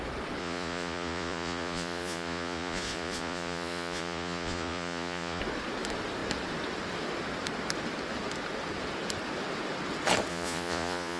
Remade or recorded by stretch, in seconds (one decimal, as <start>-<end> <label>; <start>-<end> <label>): 0.0-0.4 recorded; 0.4-5.4 remade; 5.4-10.3 recorded; 10.3-11.2 remade